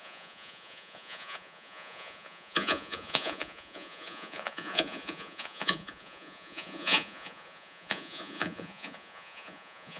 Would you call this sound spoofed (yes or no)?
yes